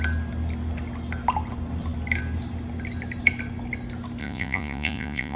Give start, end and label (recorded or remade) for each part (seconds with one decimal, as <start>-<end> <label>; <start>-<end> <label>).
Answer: 0.0-4.2 recorded; 4.2-5.4 remade